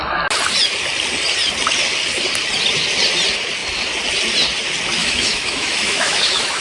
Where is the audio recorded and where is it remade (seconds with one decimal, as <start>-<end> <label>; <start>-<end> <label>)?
0.0-5.0 recorded; 5.0-6.6 remade